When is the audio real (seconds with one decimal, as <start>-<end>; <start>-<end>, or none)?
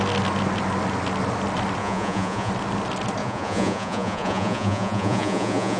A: 0.0-1.8; 2.5-3.2